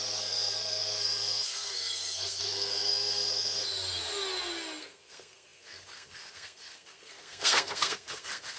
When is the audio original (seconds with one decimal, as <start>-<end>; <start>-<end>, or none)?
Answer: 3.6-4.8